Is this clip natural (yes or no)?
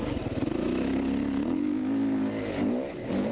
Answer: yes